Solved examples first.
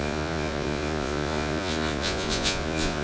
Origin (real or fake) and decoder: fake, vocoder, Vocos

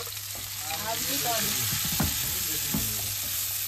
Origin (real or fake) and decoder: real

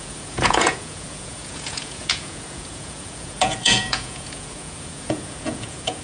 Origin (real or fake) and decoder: fake, vocoder, Vocos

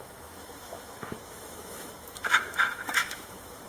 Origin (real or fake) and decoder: fake, autoencoder, DAC-VAE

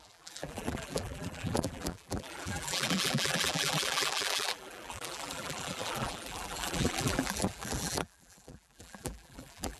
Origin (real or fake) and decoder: fake, vocoder, BigVGAN v2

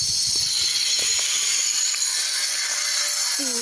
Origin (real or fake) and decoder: real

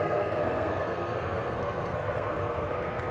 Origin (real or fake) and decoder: fake, codec, SNAC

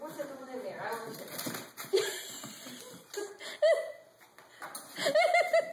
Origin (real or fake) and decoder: fake, vocoder, BigVGAN v2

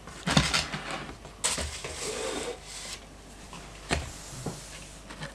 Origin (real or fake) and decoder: real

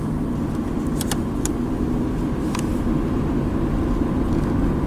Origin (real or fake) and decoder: real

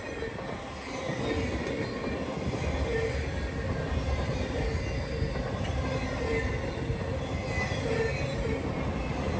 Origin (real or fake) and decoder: real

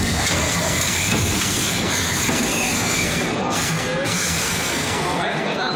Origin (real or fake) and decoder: fake, codec, SNAC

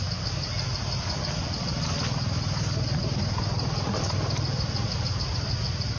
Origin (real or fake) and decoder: real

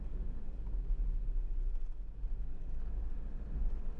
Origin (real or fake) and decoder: real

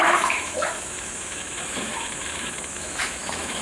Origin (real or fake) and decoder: fake, autoencoder, DAC-VAE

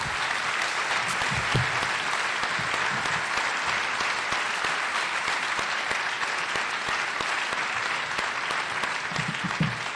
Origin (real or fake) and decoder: real